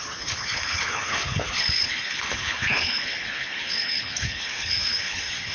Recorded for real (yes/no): no